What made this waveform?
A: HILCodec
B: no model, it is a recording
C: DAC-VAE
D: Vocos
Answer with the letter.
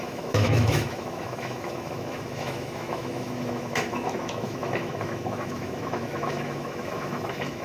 C